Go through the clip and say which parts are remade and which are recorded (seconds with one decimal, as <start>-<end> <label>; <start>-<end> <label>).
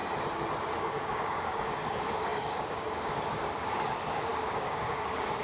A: 0.0-0.8 recorded; 0.8-5.4 remade